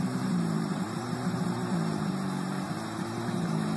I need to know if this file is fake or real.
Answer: fake